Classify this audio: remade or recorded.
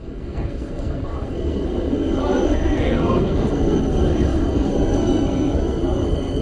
remade